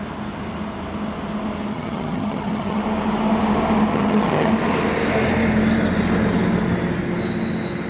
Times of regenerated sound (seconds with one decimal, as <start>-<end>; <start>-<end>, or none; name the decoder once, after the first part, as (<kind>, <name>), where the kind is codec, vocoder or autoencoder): 1.7-2.8 (vocoder, HiFi-GAN); 3.9-4.5